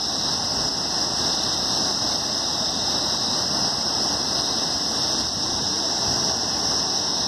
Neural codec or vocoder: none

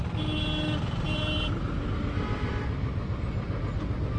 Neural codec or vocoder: none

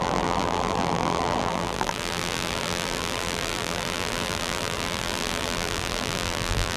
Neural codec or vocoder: vocoder, BigVGAN v2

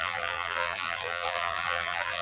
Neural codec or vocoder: vocoder, BigVGAN v2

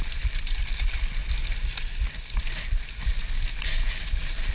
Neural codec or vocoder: none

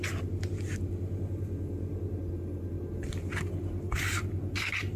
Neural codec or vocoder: none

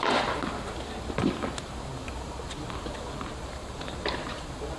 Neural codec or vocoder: none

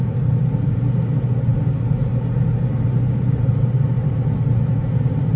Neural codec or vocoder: vocoder, BigVGAN v2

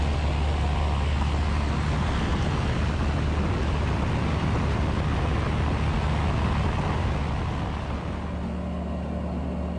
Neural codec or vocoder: none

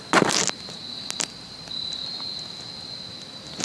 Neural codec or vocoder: none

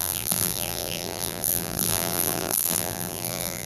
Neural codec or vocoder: vocoder, BigVGAN v2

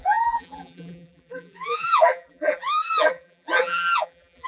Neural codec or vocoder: vocoder, BigVGAN v2